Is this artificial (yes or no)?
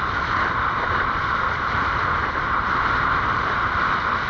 yes